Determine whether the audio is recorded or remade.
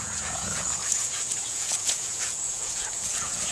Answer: remade